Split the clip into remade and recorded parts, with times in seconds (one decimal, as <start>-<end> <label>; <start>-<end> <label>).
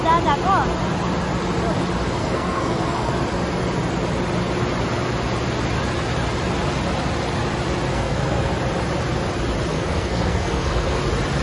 0.0-2.2 recorded; 2.2-3.1 remade; 3.1-7.9 recorded; 7.9-8.5 remade; 8.5-9.7 recorded; 9.7-11.0 remade; 11.0-11.4 recorded